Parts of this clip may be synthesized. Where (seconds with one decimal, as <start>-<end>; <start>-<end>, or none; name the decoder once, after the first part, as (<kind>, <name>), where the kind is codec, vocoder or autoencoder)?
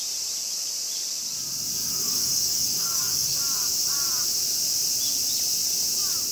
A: 1.8-3.4 (codec, DAC)